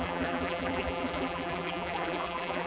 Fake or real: fake